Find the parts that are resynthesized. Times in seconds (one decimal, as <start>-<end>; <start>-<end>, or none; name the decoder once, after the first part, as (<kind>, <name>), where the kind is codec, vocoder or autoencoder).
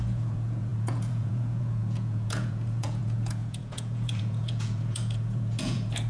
0.0-6.1 (vocoder, Vocos)